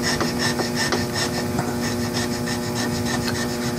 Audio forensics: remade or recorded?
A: recorded